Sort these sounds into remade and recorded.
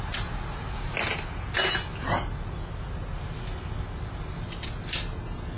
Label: recorded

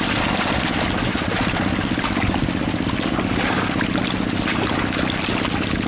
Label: recorded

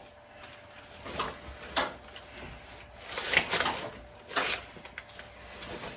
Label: recorded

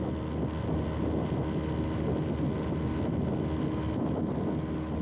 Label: recorded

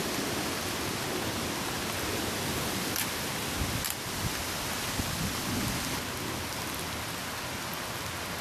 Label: recorded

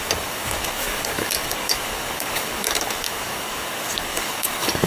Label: remade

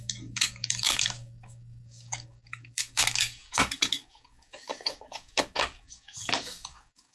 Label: remade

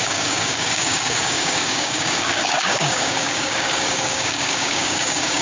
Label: remade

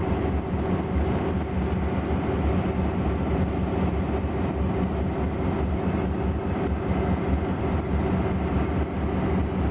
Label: recorded